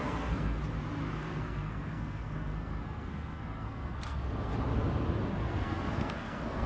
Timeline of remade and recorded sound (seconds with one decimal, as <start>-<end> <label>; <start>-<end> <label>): 0.0-0.6 remade; 0.6-1.1 recorded; 1.1-4.5 remade; 4.5-5.3 recorded; 5.3-6.7 remade

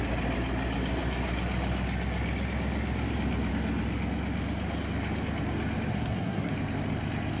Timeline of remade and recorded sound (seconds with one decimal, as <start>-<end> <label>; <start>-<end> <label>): 0.0-5.9 recorded; 5.9-6.5 remade; 6.5-7.4 recorded

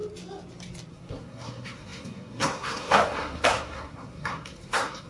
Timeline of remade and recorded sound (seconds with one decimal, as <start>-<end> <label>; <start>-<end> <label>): 0.0-0.9 recorded; 0.9-5.1 remade

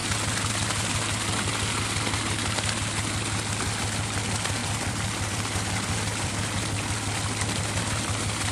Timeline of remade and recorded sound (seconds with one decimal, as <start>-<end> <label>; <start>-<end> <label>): 0.0-4.6 recorded; 4.6-6.3 remade; 6.3-8.5 recorded

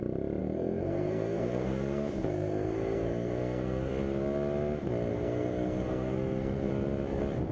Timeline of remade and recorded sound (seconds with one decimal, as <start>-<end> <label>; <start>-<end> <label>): 0.0-0.4 recorded; 0.4-3.9 remade; 3.9-5.1 recorded; 5.1-6.7 remade; 6.7-7.5 recorded

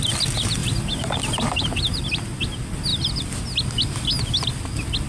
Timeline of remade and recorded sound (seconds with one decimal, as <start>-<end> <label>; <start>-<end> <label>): 0.0-0.6 recorded; 0.6-2.1 remade; 2.1-5.1 recorded